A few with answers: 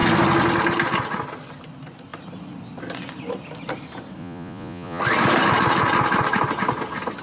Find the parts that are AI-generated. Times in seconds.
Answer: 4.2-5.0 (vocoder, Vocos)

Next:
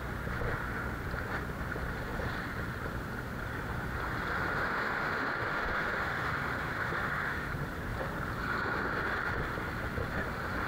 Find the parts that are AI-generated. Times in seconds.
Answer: 4.6-7.5 (autoencoder, DAC-VAE)